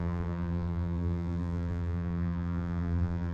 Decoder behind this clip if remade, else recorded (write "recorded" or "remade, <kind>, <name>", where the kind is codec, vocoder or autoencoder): remade, vocoder, BigVGAN v2